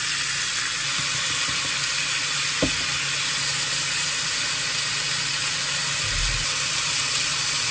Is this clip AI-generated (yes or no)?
no